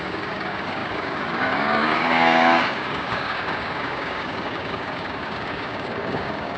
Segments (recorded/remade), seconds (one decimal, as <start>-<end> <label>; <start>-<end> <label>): 0.0-6.6 remade